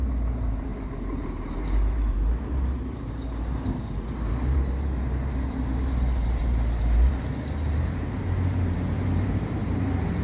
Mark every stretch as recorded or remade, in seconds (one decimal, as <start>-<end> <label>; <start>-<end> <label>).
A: 0.0-10.2 remade